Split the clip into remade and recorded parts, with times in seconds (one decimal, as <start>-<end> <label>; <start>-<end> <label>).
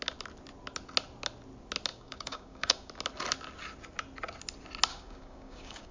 0.0-1.9 recorded; 1.9-2.9 remade; 2.9-4.9 recorded; 4.9-5.9 remade